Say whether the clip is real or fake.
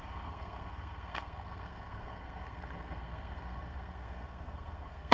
fake